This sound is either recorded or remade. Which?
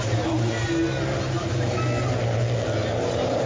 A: recorded